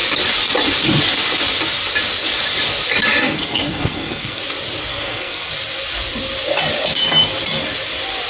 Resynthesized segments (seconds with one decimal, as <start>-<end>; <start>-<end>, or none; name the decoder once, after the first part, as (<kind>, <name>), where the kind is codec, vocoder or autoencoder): 3.2-4.4 (codec, SNAC); 4.9-5.5